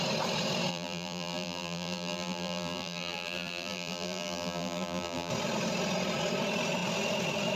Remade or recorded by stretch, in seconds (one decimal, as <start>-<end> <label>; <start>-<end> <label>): 0.0-0.7 recorded; 0.7-5.3 remade; 5.3-7.6 recorded